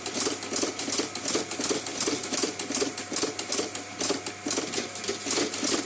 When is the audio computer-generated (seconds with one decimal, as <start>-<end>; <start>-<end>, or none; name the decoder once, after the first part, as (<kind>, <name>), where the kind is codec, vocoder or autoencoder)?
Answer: none